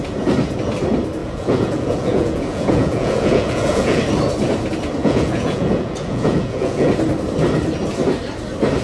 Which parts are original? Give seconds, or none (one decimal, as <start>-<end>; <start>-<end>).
0.0-1.2; 4.0-5.0; 6.9-8.8